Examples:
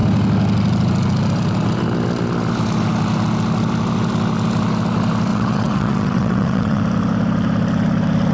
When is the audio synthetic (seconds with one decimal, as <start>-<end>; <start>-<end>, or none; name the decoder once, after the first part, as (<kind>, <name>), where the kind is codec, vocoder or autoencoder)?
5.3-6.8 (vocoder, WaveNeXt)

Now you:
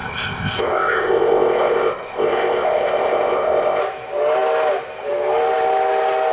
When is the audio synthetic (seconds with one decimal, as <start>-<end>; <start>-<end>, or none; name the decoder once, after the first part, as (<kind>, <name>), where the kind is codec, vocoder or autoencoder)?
0.0-3.8 (codec, ZipCodec)

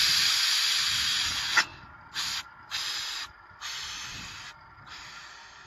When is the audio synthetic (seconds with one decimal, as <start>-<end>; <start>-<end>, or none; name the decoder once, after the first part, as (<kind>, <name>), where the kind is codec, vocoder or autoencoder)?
none

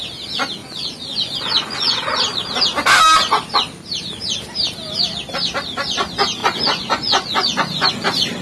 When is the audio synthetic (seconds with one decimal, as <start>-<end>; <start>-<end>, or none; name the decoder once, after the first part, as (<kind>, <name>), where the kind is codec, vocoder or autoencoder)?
0.6-2.2 (vocoder, Vocos); 6.4-7.9

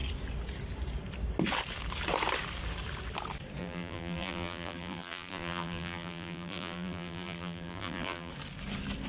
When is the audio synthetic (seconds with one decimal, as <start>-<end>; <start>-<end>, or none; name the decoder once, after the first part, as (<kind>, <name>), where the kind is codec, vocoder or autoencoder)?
3.6-8.3 (vocoder, BigVGAN v2)

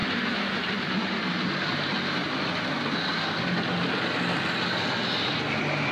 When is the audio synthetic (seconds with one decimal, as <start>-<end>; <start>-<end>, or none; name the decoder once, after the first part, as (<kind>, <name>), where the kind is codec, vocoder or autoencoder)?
0.0-1.3 (vocoder, BigVGAN v2)